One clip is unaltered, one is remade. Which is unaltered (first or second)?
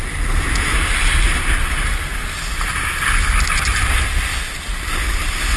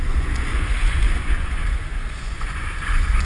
first